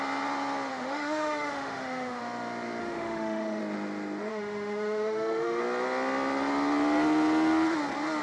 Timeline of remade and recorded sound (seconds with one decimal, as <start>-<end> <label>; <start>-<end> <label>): 0.0-0.7 recorded; 0.7-2.2 remade; 2.2-2.8 recorded; 2.8-3.6 remade; 3.6-4.3 recorded; 4.3-5.6 remade; 5.6-8.2 recorded